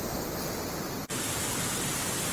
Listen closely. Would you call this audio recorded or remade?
recorded